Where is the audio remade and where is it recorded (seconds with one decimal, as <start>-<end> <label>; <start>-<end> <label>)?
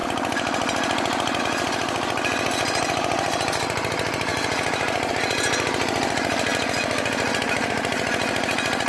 0.0-8.9 recorded